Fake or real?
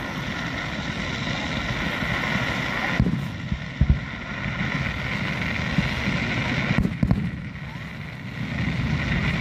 real